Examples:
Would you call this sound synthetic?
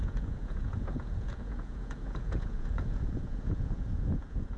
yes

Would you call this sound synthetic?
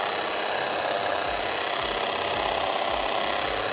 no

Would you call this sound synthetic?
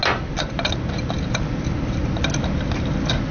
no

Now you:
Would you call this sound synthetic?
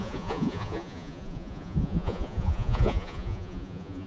yes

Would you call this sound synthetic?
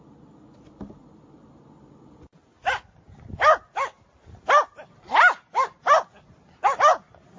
no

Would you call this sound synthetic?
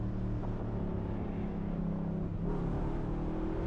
no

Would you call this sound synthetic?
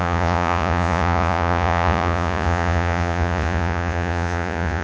yes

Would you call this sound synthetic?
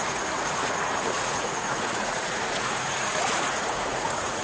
yes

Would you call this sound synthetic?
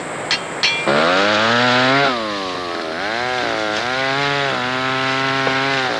no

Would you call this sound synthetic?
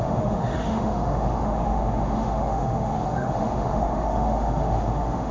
yes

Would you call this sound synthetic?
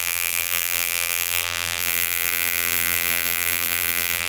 yes